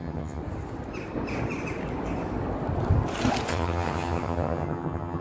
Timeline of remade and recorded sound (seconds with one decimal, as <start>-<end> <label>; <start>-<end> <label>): 0.0-0.4 remade; 0.4-3.5 recorded; 3.5-5.2 remade